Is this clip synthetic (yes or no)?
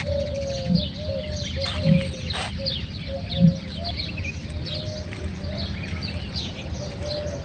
no